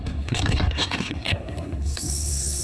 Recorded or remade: remade